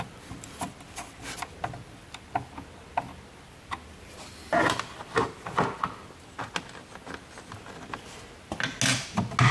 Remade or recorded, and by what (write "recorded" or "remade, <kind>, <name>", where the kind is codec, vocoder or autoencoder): recorded